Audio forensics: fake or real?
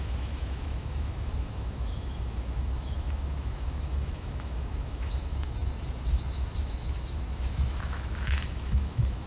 fake